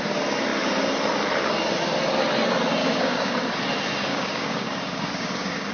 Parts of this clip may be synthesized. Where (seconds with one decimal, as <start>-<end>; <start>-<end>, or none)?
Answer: 2.8-3.4; 4.1-5.7